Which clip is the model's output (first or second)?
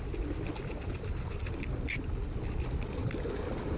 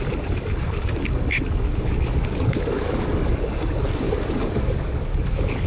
second